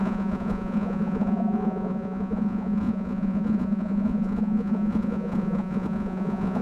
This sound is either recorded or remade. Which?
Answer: remade